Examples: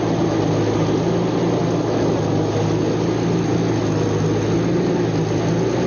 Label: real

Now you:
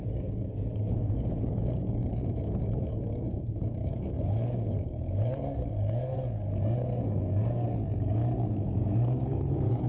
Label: fake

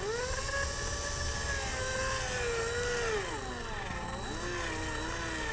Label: real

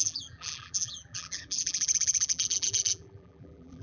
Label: fake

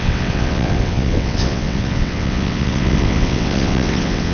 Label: fake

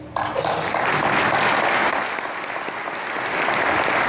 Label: real